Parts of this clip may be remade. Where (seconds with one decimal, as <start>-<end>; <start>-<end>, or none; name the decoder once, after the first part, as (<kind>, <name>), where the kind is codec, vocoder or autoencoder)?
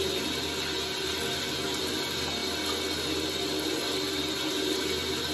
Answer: none